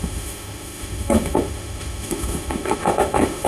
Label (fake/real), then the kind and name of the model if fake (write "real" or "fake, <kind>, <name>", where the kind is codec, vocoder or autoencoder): fake, autoencoder, DAC-VAE